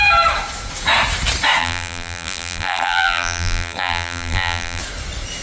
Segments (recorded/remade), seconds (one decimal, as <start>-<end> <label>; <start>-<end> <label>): 0.0-1.6 recorded; 1.6-4.8 remade; 4.8-5.4 recorded